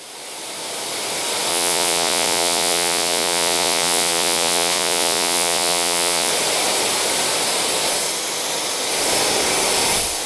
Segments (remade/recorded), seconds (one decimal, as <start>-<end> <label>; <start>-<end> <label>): 0.0-1.5 recorded; 1.5-6.3 remade; 6.3-10.3 recorded